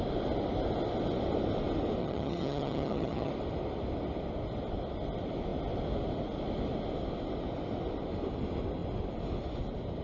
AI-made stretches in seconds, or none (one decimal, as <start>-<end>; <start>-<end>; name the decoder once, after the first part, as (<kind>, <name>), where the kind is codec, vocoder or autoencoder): 2.0-3.3 (vocoder, HiFi-GAN)